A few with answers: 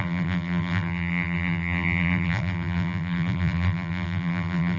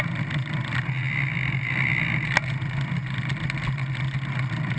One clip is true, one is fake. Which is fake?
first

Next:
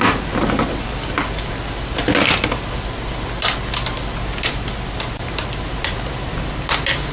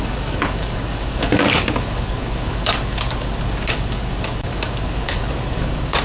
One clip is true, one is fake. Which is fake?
second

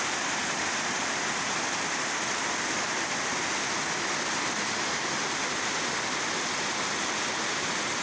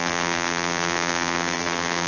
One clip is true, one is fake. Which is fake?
second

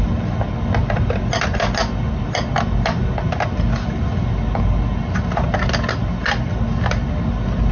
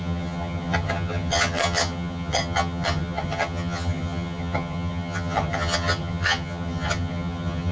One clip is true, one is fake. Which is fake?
second